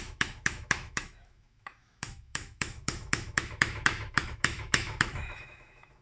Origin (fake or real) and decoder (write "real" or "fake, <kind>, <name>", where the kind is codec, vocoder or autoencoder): fake, autoencoder, DAC-VAE